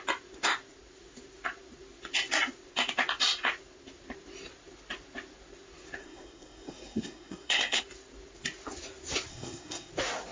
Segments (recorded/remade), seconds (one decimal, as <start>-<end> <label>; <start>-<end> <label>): 0.0-6.0 recorded; 6.0-7.8 remade; 7.8-9.3 recorded; 9.3-9.9 remade; 9.9-10.3 recorded

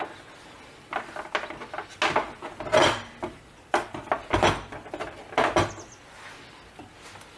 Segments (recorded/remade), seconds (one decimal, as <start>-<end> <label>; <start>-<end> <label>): 0.0-2.8 recorded; 2.8-5.3 remade; 5.3-7.4 recorded

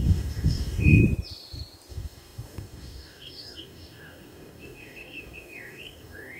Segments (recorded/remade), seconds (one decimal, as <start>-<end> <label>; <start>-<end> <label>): 0.0-1.0 remade; 1.0-1.9 recorded; 1.9-6.4 remade

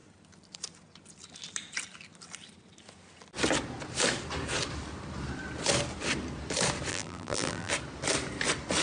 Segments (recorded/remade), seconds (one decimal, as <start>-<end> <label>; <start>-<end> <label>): 0.0-6.9 recorded; 6.9-7.7 remade; 7.7-8.8 recorded

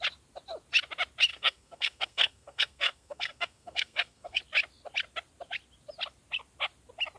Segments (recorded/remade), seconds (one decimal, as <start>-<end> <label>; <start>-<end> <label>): 0.0-1.3 recorded; 1.3-4.4 remade; 4.4-7.2 recorded